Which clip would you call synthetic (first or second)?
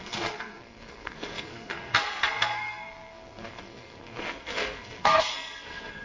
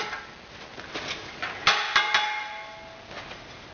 first